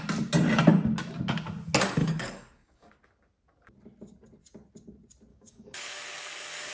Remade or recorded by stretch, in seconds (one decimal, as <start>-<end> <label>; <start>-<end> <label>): 0.0-2.0 recorded; 2.0-2.9 remade; 2.9-5.3 recorded; 5.3-6.7 remade